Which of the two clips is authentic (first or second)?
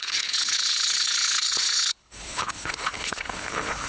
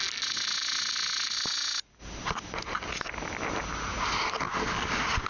second